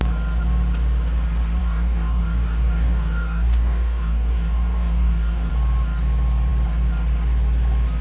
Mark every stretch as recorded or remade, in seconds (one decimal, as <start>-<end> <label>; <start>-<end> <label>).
0.0-1.6 recorded; 1.6-5.5 remade; 5.5-8.0 recorded